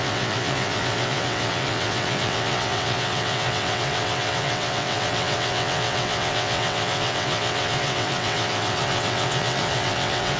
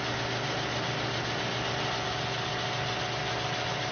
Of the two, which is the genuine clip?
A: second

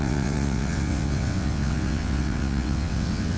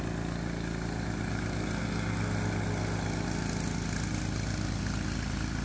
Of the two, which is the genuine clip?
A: second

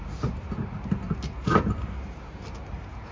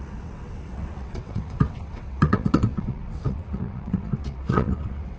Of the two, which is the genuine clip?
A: first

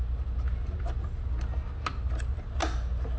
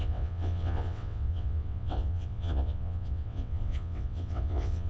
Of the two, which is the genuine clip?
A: first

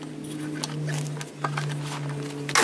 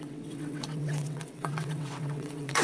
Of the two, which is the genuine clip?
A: first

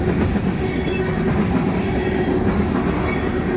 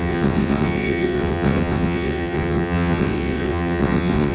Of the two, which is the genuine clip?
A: first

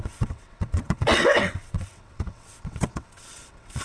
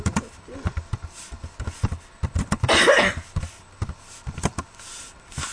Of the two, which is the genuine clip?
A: second